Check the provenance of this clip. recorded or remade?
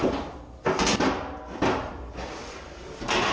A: recorded